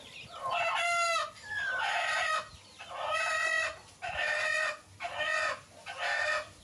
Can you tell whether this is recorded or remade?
recorded